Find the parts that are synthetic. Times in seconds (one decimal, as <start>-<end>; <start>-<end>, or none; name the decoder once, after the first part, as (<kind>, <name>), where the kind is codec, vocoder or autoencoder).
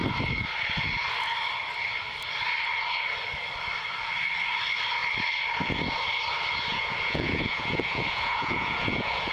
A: 6.7-9.3 (vocoder, Vocos)